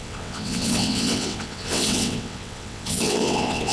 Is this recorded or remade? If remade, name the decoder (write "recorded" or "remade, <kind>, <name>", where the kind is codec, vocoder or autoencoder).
remade, vocoder, WaveNeXt